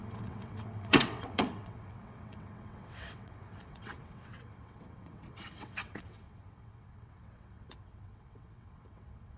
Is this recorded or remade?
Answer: remade